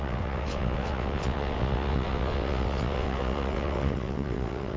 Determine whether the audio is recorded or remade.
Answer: remade